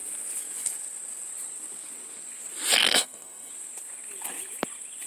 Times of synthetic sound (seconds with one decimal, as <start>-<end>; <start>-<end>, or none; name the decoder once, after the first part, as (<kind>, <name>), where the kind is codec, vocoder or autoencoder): 2.8-3.5 (codec, SNAC)